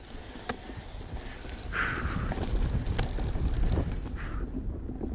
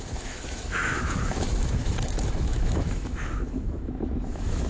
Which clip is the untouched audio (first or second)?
first